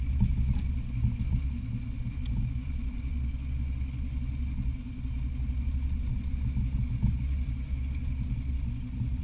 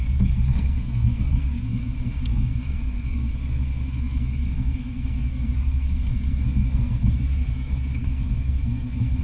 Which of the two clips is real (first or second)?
first